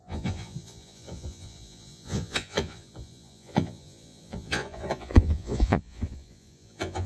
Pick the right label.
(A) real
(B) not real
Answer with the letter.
B